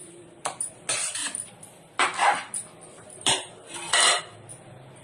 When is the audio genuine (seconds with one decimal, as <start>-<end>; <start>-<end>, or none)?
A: 0.7-1.2; 4.2-5.0